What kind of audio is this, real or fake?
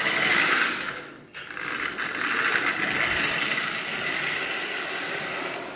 real